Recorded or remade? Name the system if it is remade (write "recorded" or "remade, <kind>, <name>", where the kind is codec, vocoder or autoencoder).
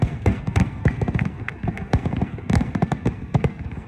remade, codec, SNAC